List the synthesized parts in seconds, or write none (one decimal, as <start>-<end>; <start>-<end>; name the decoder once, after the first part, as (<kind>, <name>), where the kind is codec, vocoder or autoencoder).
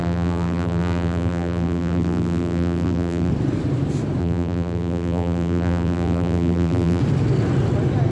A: 0.0-3.3 (vocoder, BigVGAN v2); 4.2-7.0